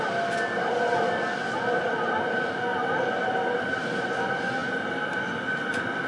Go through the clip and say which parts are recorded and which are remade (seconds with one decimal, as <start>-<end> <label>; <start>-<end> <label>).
0.0-6.1 recorded